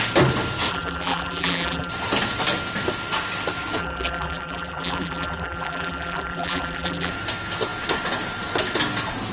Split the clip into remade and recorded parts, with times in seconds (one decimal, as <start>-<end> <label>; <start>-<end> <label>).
0.0-0.7 recorded; 0.7-1.9 remade; 1.9-3.8 recorded; 3.8-7.1 remade; 7.1-9.3 recorded